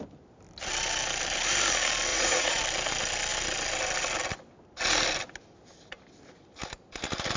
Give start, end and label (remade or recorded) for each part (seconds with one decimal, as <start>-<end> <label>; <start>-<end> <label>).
0.0-2.1 recorded; 2.1-2.6 remade; 2.6-7.4 recorded